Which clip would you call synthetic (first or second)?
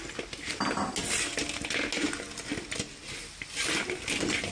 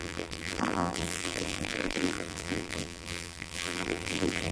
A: second